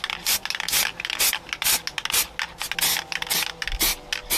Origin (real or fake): real